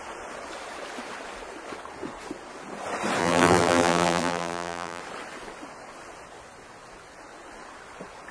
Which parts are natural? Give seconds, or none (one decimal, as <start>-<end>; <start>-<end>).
0.0-3.2; 5.0-8.3